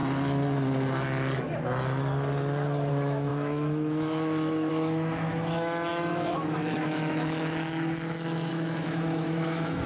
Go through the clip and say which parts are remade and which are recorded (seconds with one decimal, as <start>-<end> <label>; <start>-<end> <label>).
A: 0.0-2.9 recorded; 2.9-9.9 remade